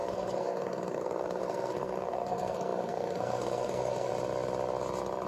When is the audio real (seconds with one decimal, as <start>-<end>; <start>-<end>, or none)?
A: 4.1-5.3